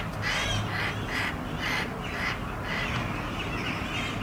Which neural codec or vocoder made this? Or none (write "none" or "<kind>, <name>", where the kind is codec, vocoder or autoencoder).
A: none